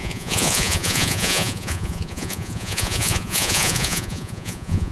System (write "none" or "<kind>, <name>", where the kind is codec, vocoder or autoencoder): vocoder, Vocos